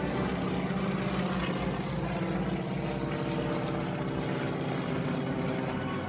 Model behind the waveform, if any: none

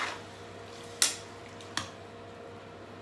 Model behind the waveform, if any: none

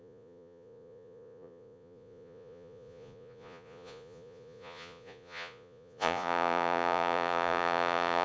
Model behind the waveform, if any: vocoder, Vocos